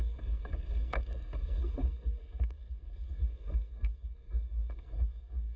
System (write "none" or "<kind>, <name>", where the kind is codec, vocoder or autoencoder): codec, SNAC